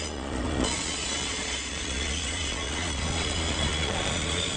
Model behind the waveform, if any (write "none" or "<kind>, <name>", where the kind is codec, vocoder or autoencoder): vocoder, Vocos